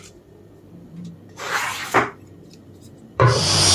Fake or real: fake